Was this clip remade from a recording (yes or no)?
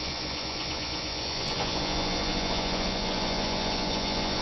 yes